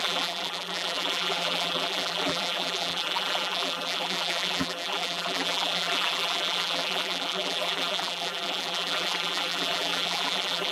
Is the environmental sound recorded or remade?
remade